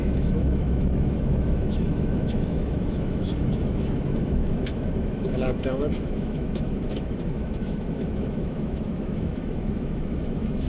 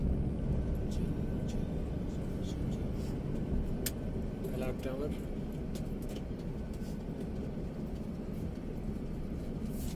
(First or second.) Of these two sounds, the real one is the second